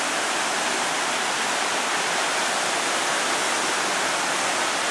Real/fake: real